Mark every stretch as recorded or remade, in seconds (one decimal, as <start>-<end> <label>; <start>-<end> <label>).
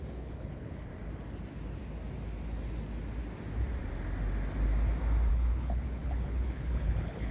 0.0-0.9 remade; 0.9-5.3 recorded; 5.3-7.3 remade